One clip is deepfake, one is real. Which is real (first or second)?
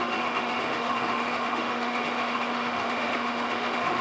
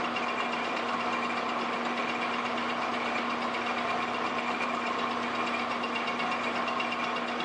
second